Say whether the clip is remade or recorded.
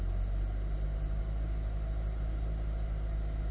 recorded